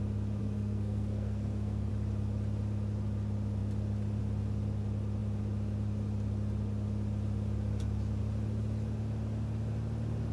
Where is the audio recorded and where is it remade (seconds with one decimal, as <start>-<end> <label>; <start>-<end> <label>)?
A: 0.0-0.4 recorded; 0.4-1.9 remade; 1.9-10.3 recorded